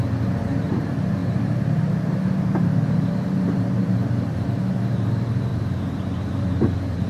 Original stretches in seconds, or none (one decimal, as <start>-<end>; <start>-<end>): none